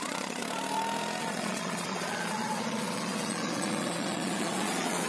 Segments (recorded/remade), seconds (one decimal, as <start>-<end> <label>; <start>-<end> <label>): 0.0-0.4 remade; 0.4-1.2 recorded; 1.2-5.1 remade

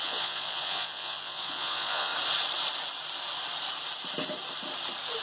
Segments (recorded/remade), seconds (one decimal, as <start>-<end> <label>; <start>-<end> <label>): 0.0-2.1 remade; 2.1-5.2 recorded

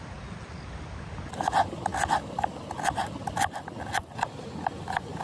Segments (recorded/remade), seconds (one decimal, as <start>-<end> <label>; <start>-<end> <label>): 0.0-5.2 recorded

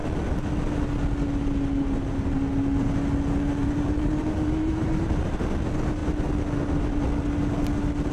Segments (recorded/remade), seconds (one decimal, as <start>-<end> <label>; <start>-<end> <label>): 0.0-3.6 recorded; 3.6-5.3 remade; 5.3-8.1 recorded

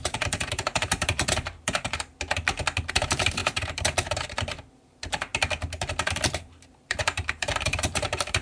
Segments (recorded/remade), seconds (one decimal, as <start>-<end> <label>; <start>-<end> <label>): 0.0-2.1 remade; 2.1-2.9 recorded; 2.9-5.3 remade; 5.3-6.3 recorded; 6.3-8.4 remade

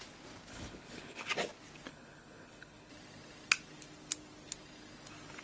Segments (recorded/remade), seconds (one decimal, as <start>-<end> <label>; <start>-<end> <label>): 0.0-0.5 recorded; 0.5-1.3 remade; 1.3-1.9 recorded; 1.9-2.9 remade; 2.9-5.4 recorded

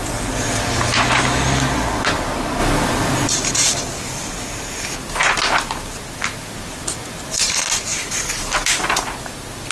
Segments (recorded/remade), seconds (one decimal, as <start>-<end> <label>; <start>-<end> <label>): 0.0-9.7 recorded

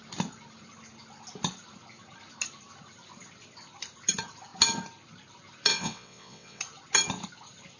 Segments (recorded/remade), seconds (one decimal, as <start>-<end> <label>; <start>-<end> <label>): 0.0-5.7 recorded; 5.7-6.6 remade; 6.6-7.8 recorded